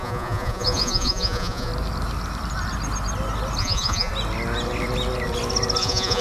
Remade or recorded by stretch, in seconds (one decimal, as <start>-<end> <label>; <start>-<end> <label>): 0.0-1.7 remade; 1.7-3.6 recorded; 3.6-4.1 remade; 4.1-5.8 recorded; 5.8-6.2 remade